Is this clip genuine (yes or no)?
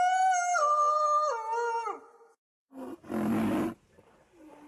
yes